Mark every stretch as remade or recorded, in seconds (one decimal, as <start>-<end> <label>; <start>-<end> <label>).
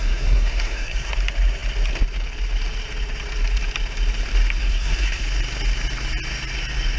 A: 0.0-1.1 remade; 1.1-4.6 recorded; 4.6-5.2 remade; 5.2-7.0 recorded